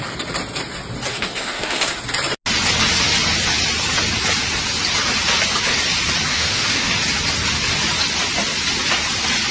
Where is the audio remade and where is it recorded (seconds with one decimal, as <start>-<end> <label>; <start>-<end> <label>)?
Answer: 0.0-1.1 recorded; 1.1-2.0 remade; 2.0-6.3 recorded; 6.3-6.9 remade; 6.9-9.5 recorded